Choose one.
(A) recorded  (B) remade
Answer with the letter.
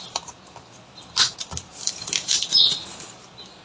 A